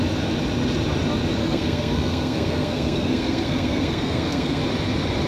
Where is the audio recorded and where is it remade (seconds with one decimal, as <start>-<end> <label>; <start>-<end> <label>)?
0.0-1.4 recorded; 1.4-4.6 remade; 4.6-5.3 recorded